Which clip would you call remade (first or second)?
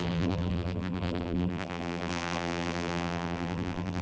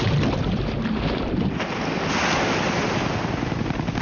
first